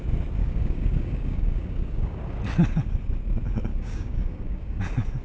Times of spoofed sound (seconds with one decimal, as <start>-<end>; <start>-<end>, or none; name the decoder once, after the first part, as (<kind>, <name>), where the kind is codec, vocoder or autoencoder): 0.4-2.2 (codec, DAC); 3.7-4.8